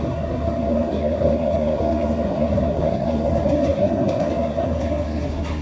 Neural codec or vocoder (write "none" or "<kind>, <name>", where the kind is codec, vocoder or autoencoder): codec, SNAC